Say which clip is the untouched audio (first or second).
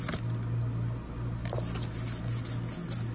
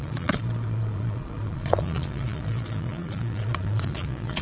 first